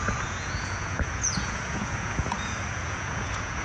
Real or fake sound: fake